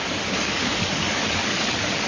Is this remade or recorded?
remade